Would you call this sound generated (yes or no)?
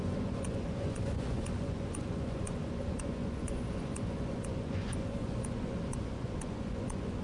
yes